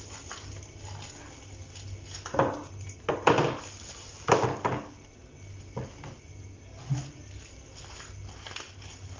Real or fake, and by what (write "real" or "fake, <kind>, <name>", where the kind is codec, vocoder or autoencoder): real